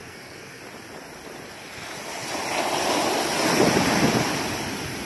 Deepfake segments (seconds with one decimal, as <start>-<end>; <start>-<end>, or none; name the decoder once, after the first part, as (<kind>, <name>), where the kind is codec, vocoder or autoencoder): 0.0-0.6 (codec, SNAC)